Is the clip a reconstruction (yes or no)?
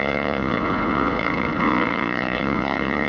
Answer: yes